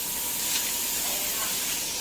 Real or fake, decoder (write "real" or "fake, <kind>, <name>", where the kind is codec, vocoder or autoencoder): real